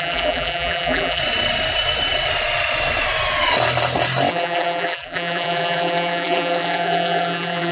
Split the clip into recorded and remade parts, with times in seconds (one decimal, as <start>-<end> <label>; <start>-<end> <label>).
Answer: 0.0-1.2 remade; 1.2-4.3 recorded; 4.3-7.7 remade